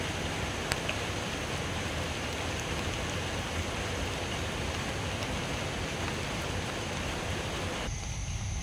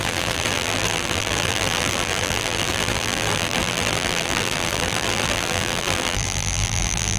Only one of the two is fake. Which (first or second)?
second